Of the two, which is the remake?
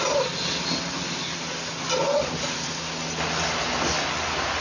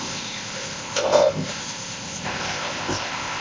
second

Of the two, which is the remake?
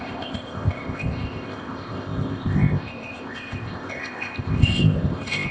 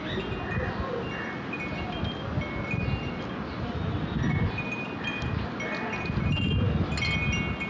first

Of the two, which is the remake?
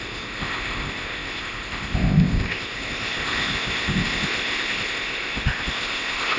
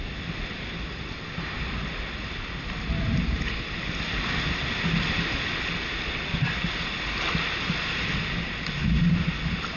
first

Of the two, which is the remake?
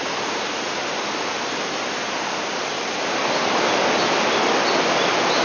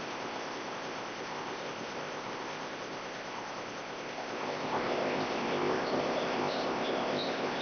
second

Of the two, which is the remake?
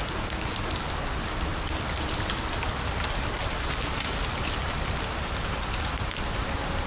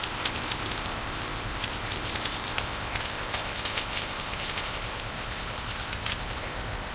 second